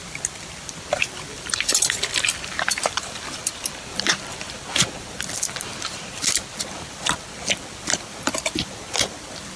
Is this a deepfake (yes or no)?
yes